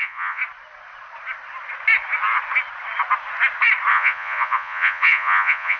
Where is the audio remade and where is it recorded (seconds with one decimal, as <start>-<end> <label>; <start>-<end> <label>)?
0.0-0.4 remade; 0.4-3.9 recorded; 3.9-5.8 remade